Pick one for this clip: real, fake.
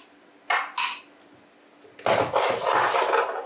real